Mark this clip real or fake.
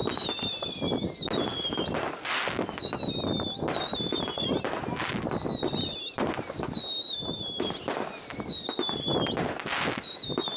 real